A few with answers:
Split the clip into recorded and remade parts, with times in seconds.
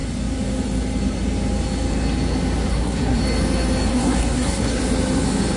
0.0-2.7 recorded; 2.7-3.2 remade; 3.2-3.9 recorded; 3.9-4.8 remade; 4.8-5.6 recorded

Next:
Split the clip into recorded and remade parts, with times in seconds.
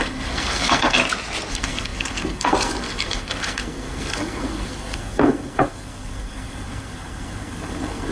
0.0-1.0 remade; 1.0-1.5 recorded; 1.5-8.1 remade